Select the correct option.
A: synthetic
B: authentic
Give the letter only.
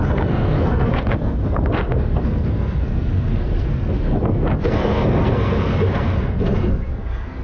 A